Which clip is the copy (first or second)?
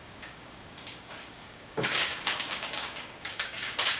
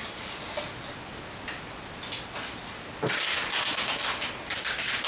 first